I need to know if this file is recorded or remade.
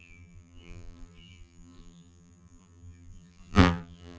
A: remade